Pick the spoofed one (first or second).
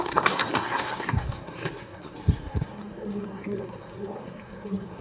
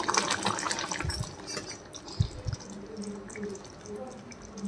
first